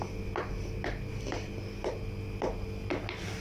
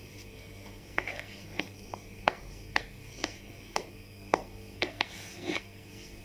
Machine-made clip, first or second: second